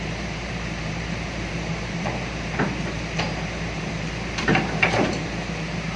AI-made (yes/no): yes